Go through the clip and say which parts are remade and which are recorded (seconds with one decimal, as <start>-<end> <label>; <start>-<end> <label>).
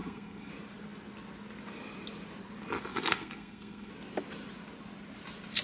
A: 0.0-0.5 remade; 0.5-2.9 recorded; 2.9-3.9 remade; 3.9-5.6 recorded